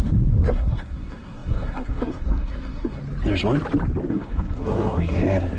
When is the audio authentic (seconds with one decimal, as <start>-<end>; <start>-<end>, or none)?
3.0-4.1

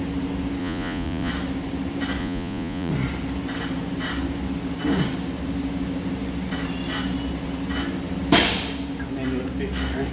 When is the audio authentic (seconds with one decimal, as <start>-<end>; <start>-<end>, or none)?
0.0-0.6; 1.3-2.2; 2.9-10.1

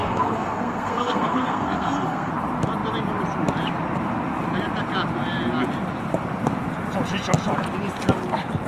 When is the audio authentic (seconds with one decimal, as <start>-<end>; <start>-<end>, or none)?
2.3-8.7

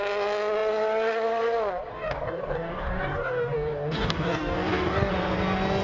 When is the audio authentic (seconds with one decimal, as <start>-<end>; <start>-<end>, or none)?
0.0-1.9; 5.1-5.8